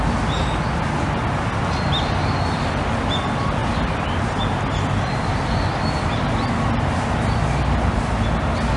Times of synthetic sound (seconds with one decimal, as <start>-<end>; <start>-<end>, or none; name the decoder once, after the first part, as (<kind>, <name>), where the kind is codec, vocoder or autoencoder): none